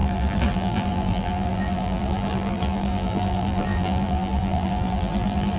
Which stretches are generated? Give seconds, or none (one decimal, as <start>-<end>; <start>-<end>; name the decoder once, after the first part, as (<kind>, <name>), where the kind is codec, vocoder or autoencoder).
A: 0.0-5.6 (vocoder, BigVGAN v2)